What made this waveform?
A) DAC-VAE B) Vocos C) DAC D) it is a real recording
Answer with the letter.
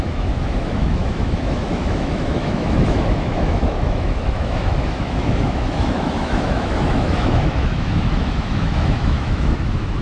A